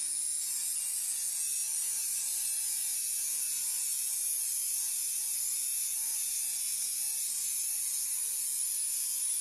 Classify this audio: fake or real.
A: real